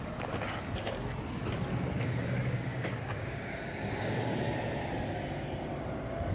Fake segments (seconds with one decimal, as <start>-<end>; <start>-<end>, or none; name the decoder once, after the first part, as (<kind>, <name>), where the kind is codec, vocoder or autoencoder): 1.7-4.4 (codec, DAC)